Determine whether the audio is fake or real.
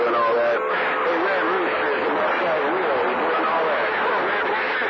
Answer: real